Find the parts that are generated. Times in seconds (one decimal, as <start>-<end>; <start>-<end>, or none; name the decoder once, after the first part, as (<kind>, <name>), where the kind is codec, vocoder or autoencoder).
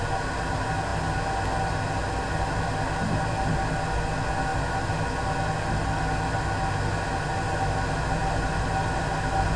none